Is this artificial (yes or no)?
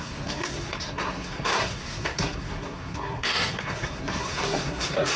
yes